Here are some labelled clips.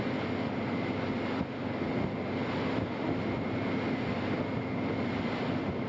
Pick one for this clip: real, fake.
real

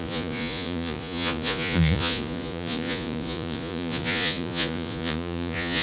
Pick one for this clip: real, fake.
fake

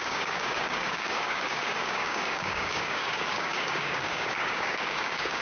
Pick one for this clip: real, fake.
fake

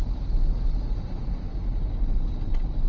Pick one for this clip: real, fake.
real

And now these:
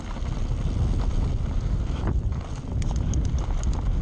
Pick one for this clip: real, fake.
real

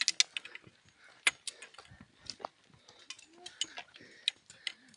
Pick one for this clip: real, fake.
real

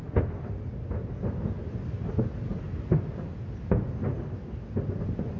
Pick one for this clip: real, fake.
real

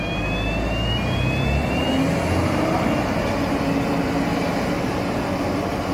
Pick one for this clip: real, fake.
real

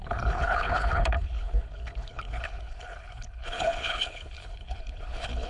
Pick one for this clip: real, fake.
fake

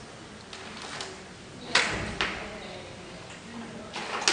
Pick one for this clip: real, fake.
real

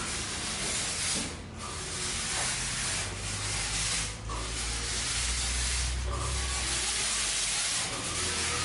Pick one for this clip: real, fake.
real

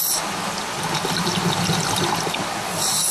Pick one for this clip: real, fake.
real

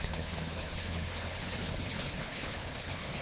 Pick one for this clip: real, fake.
fake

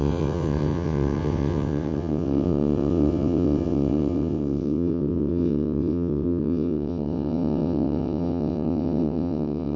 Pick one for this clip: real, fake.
fake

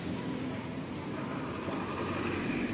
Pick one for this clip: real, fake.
real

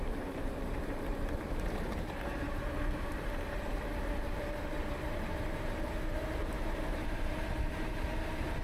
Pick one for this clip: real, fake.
fake